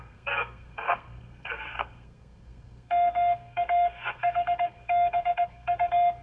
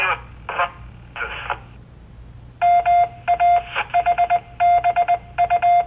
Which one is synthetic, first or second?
first